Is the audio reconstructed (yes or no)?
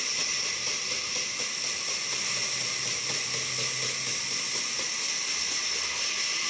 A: no